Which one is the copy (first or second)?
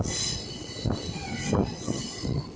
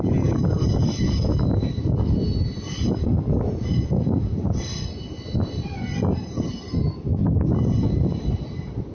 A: first